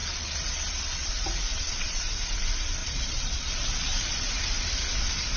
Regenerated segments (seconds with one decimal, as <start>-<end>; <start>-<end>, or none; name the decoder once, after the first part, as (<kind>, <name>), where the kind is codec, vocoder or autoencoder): 0.0-1.1 (vocoder, Vocos); 1.5-2.1; 2.8-3.4; 3.9-4.4